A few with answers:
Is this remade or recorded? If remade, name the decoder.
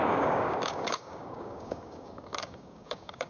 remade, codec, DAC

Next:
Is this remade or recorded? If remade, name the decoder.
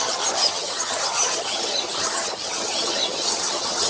remade, vocoder, HiFi-GAN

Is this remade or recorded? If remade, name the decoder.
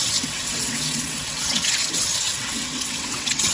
remade, vocoder, WaveNeXt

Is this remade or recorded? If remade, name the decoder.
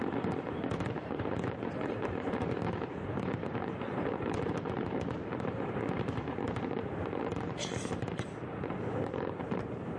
remade, vocoder, BigVGAN v2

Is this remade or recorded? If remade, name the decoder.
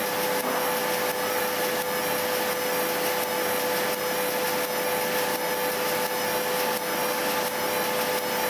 recorded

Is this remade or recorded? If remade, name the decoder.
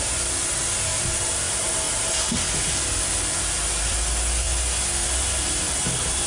recorded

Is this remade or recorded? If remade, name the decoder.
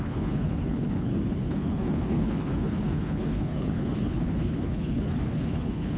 remade, codec, HILCodec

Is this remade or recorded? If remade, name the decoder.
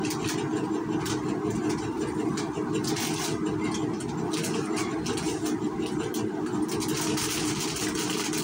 recorded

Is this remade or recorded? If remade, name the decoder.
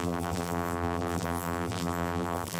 remade, vocoder, BigVGAN v2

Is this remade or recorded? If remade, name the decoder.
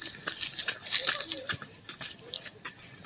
recorded